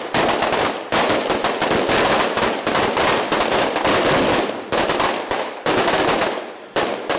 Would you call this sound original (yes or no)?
yes